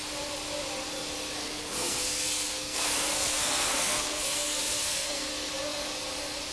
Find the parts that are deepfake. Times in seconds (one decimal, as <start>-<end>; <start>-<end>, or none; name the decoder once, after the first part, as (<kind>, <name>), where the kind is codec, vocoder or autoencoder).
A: 1.4-5.3 (codec, SNAC)